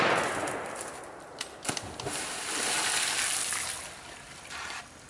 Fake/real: real